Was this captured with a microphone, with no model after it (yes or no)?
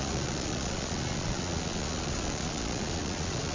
no